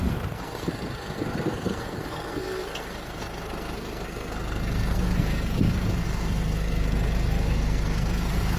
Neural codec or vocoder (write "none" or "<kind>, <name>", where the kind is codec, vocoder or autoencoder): codec, SNAC